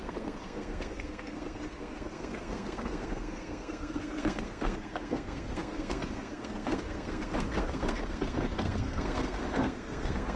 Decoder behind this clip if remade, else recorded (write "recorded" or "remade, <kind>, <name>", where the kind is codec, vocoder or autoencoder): remade, codec, SNAC